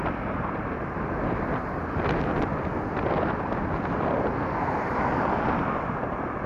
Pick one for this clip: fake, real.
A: real